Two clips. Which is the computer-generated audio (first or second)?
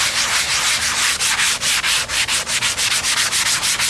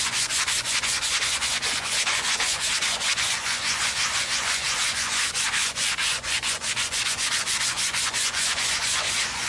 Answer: second